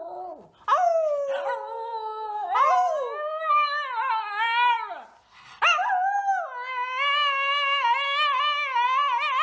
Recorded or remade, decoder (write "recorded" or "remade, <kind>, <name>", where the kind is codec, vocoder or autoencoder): recorded